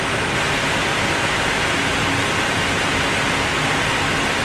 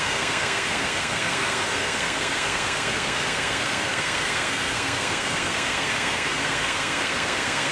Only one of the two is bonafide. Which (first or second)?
first